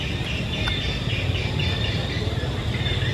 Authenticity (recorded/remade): recorded